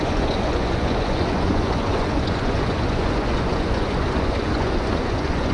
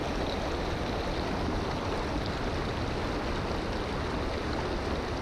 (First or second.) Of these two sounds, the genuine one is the second